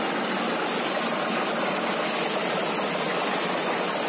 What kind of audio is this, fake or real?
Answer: real